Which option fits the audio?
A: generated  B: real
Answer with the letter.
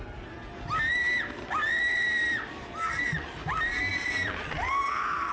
B